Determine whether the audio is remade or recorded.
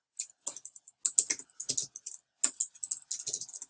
recorded